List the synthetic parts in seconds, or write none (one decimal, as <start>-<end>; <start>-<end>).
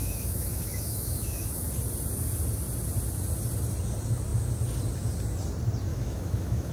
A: 0.0-1.7; 5.9-6.7